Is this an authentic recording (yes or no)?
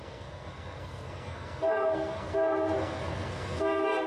no